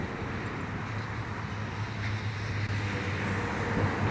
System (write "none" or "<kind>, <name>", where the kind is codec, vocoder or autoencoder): none